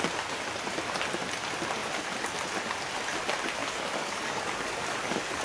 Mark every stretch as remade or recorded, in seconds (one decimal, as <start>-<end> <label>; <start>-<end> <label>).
0.0-3.6 recorded; 3.6-5.4 remade